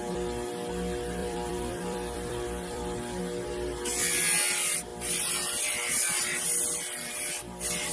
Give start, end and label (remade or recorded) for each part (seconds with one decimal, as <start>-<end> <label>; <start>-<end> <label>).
0.0-1.2 recorded; 1.2-3.2 remade; 3.2-4.9 recorded; 4.9-7.3 remade; 7.3-7.9 recorded